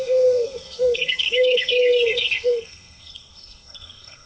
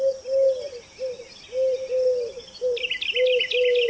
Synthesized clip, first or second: first